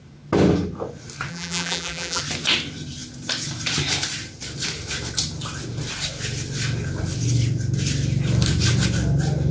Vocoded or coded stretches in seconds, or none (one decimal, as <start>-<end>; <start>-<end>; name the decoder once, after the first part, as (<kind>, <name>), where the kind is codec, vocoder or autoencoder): 1.3-2.2 (vocoder, BigVGAN v2)